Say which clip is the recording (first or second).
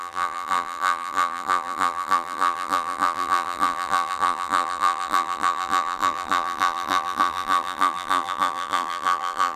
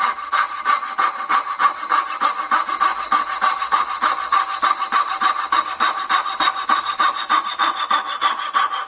second